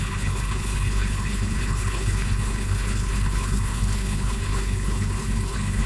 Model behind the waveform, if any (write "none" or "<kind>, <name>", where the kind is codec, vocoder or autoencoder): codec, HILCodec